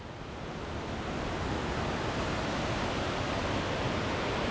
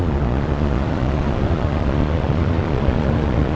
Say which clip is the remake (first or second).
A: second